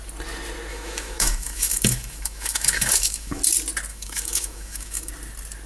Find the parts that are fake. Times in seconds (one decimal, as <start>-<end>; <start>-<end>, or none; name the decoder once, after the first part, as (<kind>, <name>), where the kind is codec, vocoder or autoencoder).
0.7-3.4 (autoencoder, DAC-VAE); 3.9-5.1

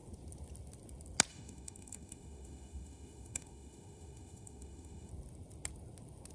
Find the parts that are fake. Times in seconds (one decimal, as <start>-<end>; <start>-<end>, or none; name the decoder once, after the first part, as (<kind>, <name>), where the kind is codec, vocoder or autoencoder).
1.3-5.1 (autoencoder, DAC-VAE)

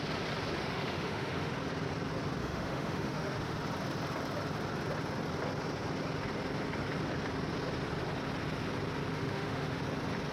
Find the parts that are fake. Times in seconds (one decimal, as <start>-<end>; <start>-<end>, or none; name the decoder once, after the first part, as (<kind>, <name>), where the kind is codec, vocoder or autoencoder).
0.6-1.5 (autoencoder, DAC-VAE); 2.4-3.6; 9.1-9.8

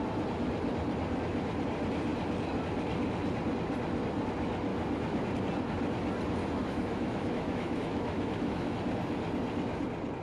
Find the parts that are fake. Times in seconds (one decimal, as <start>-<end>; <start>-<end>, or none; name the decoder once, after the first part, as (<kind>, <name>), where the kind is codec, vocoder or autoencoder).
4.7-5.3 (autoencoder, DAC-VAE); 6.4-8.7

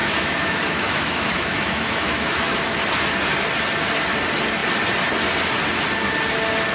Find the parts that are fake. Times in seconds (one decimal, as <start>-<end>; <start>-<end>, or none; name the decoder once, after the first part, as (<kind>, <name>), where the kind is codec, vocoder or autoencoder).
0.0-2.8 (autoencoder, DAC-VAE)

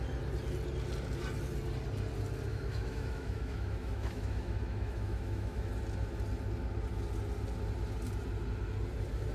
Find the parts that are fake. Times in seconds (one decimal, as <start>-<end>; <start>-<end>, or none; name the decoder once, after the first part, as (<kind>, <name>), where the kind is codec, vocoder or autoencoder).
2.5-5.7 (autoencoder, DAC-VAE)

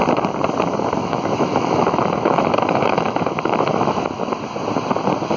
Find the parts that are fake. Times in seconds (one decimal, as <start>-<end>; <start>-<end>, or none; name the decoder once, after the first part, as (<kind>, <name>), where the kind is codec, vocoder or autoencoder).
1.0-4.2 (autoencoder, DAC-VAE)